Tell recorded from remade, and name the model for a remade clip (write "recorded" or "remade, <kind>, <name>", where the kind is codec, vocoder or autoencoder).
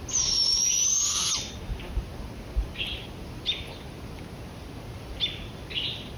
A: recorded